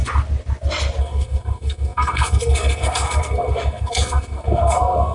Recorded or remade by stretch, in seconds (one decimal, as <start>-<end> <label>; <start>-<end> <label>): 0.0-1.0 recorded; 1.0-5.1 remade